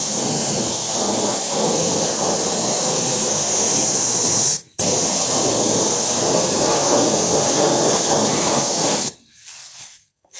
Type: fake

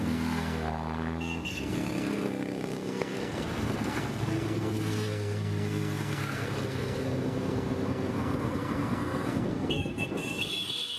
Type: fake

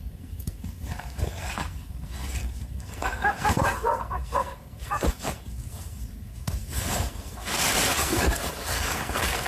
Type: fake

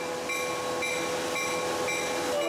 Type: real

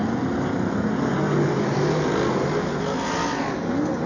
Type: real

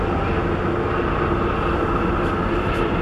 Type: real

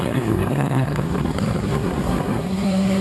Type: fake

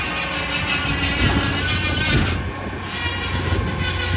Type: real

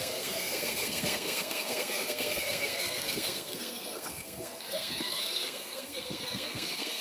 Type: fake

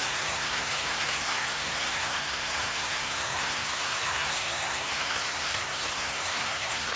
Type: fake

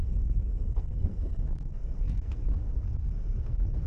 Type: fake